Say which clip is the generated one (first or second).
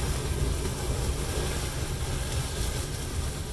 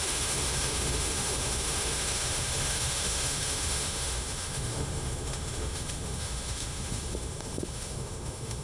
second